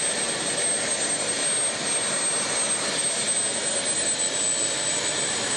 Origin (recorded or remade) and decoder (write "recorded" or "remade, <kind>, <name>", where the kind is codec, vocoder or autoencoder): recorded